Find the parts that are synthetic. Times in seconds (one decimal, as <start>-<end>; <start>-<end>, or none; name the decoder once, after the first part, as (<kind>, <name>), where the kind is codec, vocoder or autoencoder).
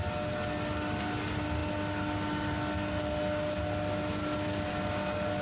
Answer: none